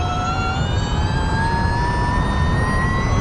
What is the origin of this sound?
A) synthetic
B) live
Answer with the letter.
B